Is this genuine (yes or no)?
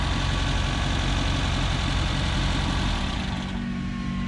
yes